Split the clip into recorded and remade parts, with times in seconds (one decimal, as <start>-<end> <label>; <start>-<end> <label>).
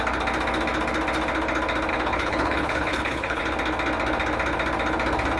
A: 0.0-1.9 recorded; 1.9-3.4 remade; 3.4-5.4 recorded